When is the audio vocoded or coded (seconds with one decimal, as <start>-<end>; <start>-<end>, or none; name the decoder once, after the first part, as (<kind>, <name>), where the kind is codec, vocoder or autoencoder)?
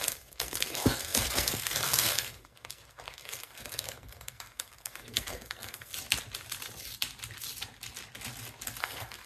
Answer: 0.0-5.9 (codec, SNAC); 8.8-9.3